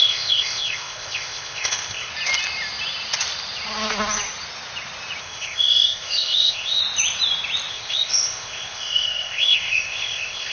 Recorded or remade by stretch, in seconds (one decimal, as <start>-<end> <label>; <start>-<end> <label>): 0.0-2.1 remade; 2.1-5.2 recorded; 5.2-6.8 remade; 6.8-7.7 recorded; 7.7-10.5 remade